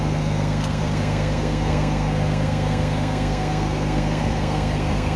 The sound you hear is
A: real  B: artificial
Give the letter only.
B